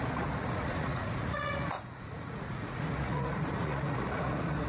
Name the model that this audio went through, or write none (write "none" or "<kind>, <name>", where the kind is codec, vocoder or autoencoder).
vocoder, Vocos